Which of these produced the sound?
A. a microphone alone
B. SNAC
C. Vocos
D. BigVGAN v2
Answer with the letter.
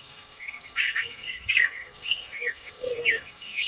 B